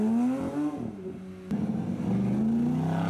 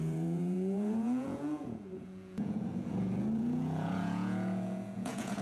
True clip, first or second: first